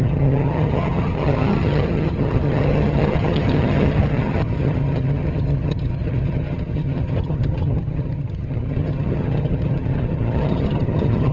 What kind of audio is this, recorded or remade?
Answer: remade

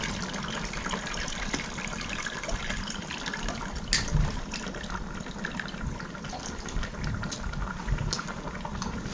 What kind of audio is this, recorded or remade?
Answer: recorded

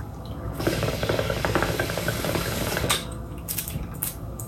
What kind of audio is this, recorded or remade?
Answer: remade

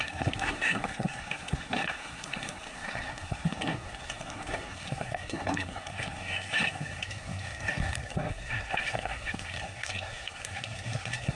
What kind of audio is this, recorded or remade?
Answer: remade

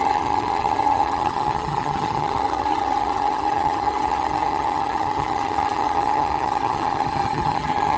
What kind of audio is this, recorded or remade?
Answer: remade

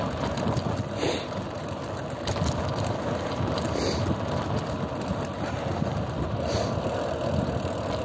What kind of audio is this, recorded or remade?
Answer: recorded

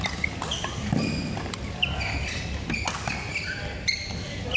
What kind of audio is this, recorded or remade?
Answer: recorded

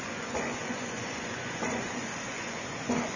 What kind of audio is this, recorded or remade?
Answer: remade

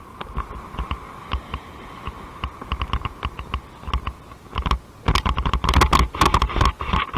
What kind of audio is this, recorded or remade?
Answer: recorded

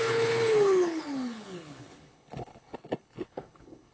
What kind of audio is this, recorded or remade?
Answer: remade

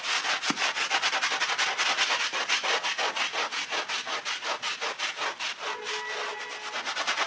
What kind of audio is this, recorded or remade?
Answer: recorded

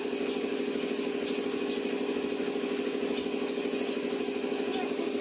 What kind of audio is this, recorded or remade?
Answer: recorded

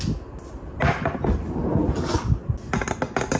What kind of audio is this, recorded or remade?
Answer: recorded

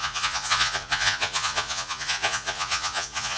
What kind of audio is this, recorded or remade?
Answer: remade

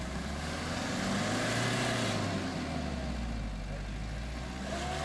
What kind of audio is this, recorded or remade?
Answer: recorded